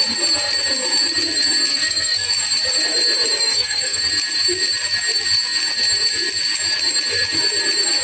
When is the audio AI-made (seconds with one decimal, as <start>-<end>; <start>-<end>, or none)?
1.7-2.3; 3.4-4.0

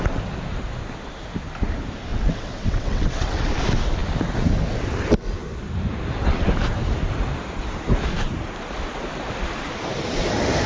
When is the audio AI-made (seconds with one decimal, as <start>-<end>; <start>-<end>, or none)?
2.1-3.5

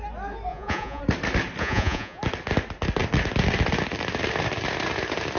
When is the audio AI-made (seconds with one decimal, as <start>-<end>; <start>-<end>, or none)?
0.5-1.0; 1.6-2.2